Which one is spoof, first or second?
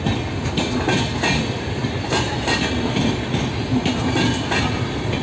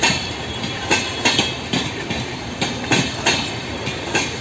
second